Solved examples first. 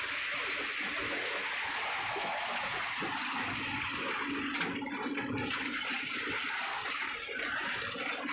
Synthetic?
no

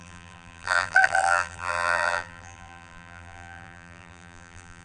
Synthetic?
yes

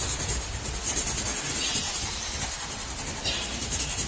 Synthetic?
no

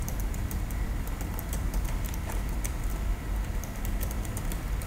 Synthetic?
yes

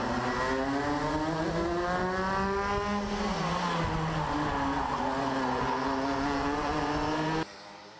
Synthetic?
no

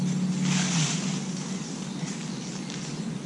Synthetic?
no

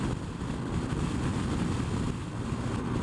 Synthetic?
no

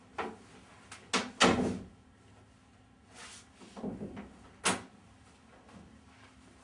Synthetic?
no